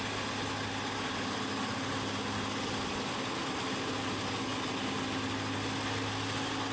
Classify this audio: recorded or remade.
recorded